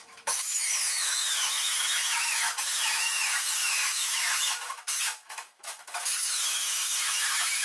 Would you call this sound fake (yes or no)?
yes